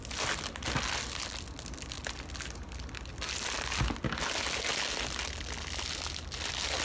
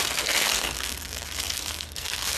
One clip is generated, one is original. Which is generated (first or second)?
second